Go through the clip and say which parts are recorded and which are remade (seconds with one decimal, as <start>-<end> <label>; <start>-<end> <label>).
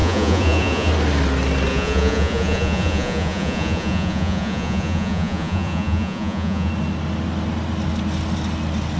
0.0-0.9 remade; 0.9-1.7 recorded; 1.7-6.7 remade; 6.7-9.0 recorded